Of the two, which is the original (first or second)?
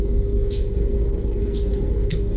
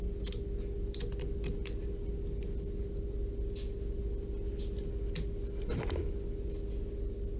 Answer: second